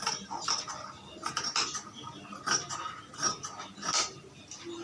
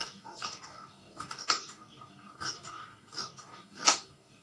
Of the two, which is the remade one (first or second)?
second